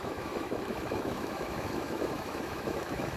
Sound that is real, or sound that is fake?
fake